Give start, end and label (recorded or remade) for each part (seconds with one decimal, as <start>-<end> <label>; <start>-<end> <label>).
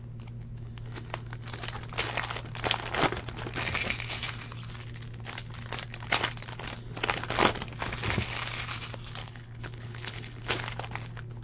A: 0.0-9.2 recorded; 9.2-10.6 remade; 10.6-11.4 recorded